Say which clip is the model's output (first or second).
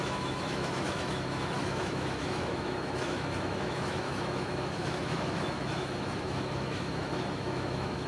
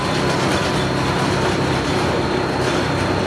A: first